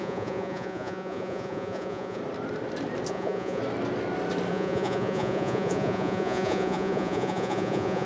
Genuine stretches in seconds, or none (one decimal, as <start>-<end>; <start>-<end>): 2.2-3.1; 3.6-4.5